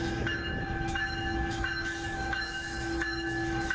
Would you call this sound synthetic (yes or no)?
yes